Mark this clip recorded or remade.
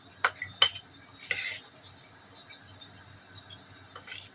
recorded